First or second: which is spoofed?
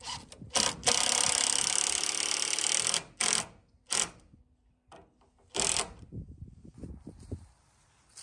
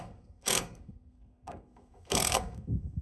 second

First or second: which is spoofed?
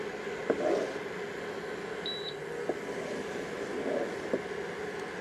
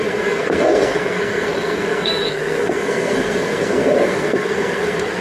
second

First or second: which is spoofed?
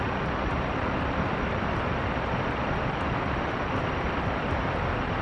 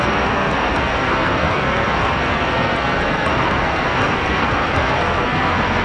second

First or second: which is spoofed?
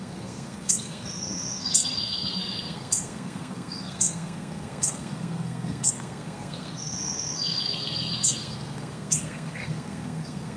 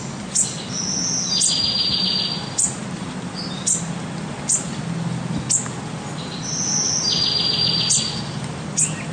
first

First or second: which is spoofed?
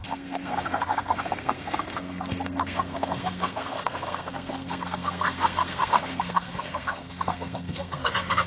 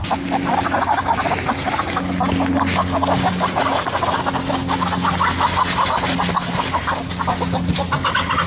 first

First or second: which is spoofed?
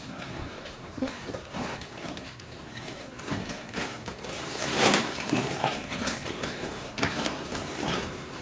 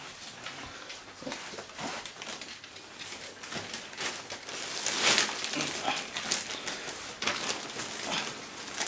first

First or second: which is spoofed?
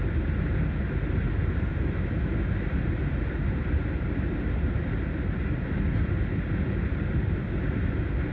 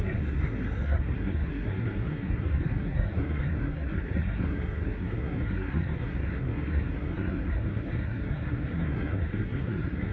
second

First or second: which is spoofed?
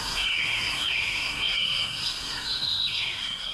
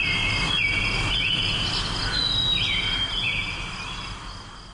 first